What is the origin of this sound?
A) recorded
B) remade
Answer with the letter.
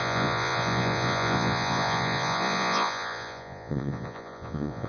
B